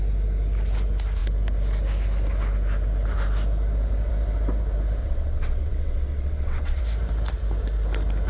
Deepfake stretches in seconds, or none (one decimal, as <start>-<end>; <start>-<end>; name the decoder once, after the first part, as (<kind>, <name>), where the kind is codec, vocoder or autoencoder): 5.0-6.8 (vocoder, WaveNeXt)